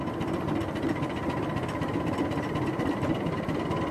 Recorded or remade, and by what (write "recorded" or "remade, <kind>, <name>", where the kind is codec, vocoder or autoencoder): recorded